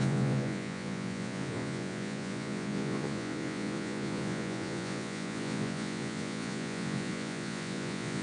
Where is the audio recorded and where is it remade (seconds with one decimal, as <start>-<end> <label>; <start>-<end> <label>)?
0.0-8.2 remade